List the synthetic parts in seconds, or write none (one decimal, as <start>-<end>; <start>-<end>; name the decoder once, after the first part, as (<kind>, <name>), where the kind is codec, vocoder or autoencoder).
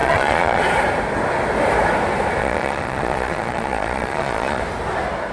0.0-0.6 (vocoder, Vocos); 2.4-4.6